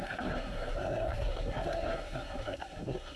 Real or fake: fake